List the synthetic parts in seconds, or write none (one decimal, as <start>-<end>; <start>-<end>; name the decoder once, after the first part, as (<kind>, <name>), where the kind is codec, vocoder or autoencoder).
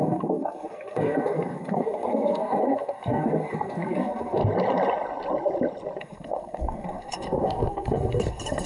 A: 0.0-4.4 (codec, SNAC); 6.0-8.7